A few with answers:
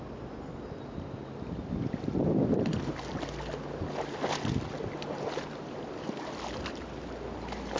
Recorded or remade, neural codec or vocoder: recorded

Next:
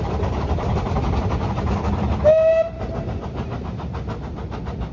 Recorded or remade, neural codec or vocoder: recorded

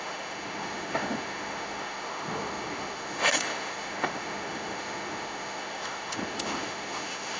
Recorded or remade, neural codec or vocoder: remade, autoencoder, DAC-VAE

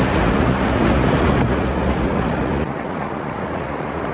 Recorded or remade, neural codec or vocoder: remade, vocoder, Vocos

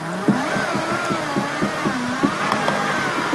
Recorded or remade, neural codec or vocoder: recorded